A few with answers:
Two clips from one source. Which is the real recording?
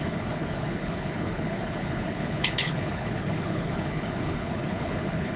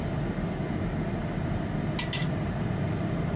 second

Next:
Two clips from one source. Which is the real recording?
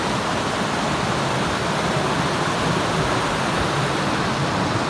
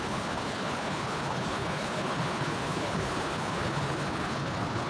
first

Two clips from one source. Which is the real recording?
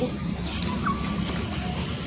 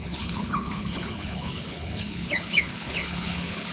first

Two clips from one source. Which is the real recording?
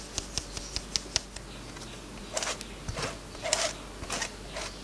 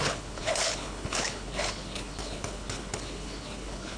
first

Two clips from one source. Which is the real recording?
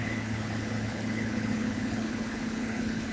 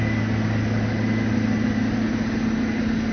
second